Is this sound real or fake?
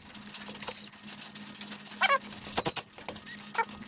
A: real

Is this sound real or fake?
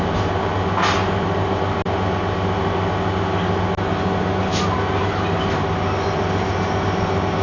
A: real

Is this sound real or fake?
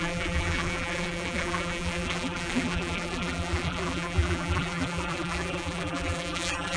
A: fake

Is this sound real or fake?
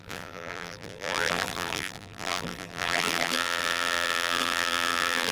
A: fake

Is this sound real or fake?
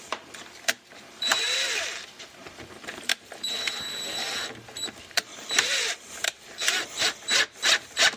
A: fake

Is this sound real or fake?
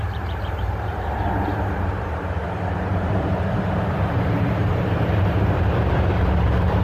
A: fake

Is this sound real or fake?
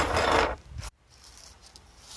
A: real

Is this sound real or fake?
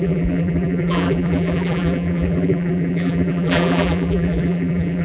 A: fake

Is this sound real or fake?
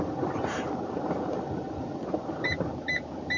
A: fake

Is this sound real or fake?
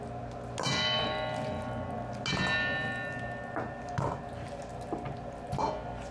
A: real